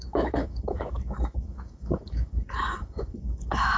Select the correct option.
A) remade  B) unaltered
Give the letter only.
A